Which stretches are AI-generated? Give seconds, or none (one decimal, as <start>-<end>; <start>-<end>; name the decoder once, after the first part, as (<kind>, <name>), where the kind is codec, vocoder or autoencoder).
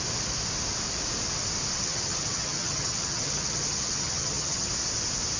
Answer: 1.8-4.7 (vocoder, HiFi-GAN)